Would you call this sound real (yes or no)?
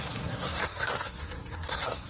no